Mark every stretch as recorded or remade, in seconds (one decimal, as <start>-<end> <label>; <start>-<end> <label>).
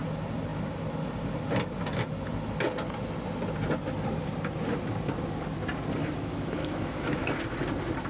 0.0-6.0 recorded; 6.0-7.2 remade; 7.2-8.1 recorded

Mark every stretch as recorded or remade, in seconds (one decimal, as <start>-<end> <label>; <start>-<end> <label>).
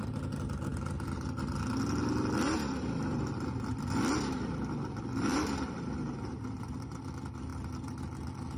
0.0-5.3 recorded; 5.3-7.0 remade; 7.0-7.5 recorded; 7.5-8.0 remade; 8.0-8.6 recorded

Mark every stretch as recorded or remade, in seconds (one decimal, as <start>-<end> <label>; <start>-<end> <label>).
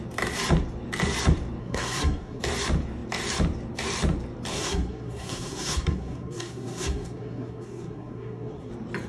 0.0-1.6 recorded; 1.6-2.4 remade; 2.4-4.5 recorded; 4.5-8.7 remade; 8.7-9.1 recorded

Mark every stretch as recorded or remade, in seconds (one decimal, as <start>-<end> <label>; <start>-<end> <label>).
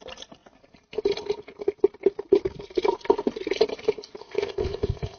0.0-4.2 recorded; 4.2-5.2 remade